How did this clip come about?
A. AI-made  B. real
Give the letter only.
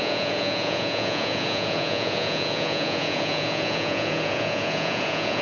A